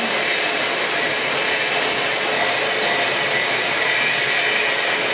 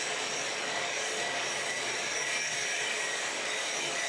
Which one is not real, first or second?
second